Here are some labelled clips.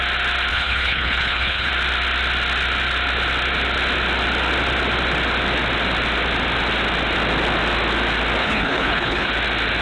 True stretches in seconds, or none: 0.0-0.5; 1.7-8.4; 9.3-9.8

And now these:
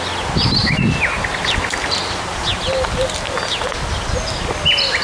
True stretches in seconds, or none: 0.0-5.0

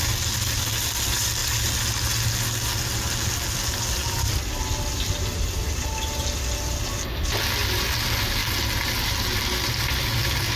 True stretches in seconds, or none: 0.0-10.6